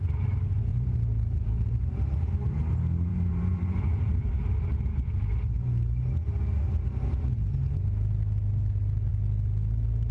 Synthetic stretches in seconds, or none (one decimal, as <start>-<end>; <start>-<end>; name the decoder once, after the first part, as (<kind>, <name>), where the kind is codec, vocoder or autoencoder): 0.7-2.6 (vocoder, BigVGAN v2); 3.1-4.6